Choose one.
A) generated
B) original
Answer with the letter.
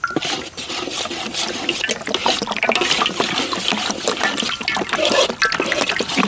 B